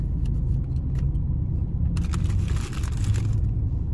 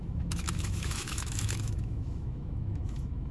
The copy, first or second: second